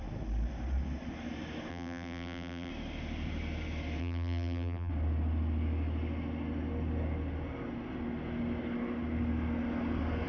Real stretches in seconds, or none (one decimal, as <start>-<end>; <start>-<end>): 0.0-1.7; 2.7-4.0; 4.9-10.3